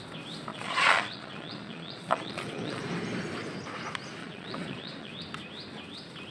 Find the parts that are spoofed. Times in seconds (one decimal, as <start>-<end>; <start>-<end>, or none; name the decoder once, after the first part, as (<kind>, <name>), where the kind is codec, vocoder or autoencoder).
0.5-2.8 (vocoder, Vocos); 4.2-5.1